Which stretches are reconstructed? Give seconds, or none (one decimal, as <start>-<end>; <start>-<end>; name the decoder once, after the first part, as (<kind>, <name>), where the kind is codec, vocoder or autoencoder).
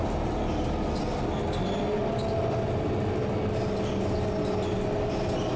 none